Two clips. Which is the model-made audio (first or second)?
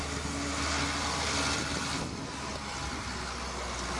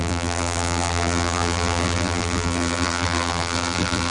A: second